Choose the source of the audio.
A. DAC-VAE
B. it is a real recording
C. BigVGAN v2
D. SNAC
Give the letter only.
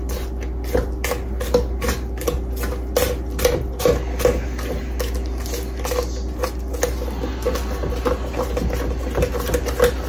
B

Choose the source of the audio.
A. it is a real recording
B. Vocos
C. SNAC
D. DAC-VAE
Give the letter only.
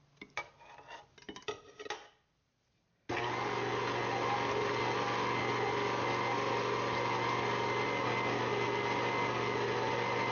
A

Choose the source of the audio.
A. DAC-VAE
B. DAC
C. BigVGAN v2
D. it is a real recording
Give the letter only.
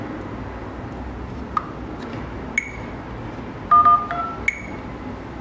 D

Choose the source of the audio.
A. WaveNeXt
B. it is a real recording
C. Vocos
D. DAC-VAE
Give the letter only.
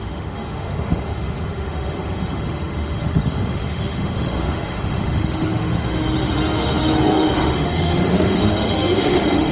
D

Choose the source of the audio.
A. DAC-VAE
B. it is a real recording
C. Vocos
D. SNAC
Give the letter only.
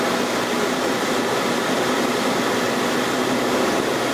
B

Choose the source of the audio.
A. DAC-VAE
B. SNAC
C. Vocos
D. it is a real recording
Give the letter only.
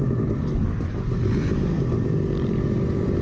D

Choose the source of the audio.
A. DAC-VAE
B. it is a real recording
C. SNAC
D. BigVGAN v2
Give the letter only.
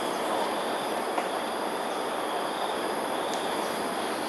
B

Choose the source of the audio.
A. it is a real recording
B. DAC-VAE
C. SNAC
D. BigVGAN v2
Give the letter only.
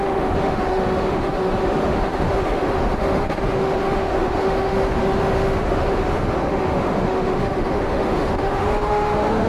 B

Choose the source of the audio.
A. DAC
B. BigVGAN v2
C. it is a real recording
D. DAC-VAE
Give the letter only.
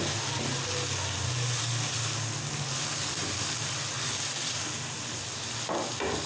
C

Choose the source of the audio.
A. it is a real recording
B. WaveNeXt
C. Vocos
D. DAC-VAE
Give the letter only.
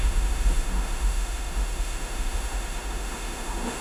D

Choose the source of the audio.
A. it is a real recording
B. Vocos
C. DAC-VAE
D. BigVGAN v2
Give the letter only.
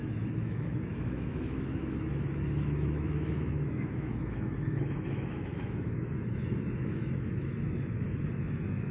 C